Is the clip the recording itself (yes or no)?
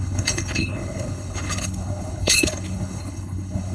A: no